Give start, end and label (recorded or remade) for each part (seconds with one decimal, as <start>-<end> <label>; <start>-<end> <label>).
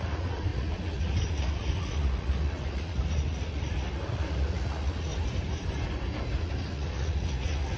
0.0-5.1 remade; 5.1-6.4 recorded; 6.4-7.8 remade